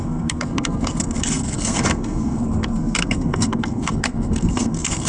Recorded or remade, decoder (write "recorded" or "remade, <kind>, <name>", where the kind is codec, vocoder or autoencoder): remade, codec, SNAC